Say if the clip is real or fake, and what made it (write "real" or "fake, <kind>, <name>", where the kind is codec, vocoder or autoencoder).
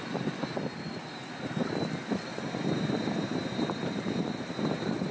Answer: fake, vocoder, BigVGAN v2